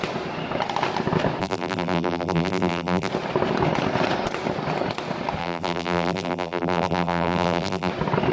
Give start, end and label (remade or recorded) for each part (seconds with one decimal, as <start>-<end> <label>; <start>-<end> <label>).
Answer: 0.0-1.4 recorded; 1.4-3.1 remade; 3.1-5.4 recorded; 5.4-7.9 remade; 7.9-8.3 recorded